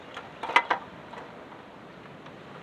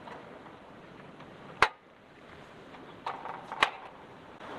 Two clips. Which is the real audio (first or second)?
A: first